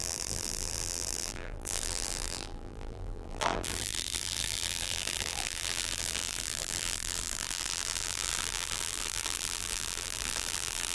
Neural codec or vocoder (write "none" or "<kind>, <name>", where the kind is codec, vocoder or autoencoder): vocoder, BigVGAN v2